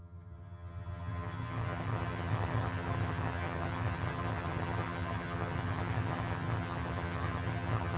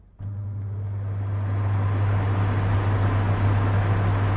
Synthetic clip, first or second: first